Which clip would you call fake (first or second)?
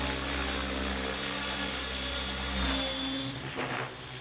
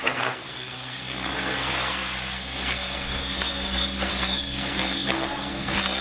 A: second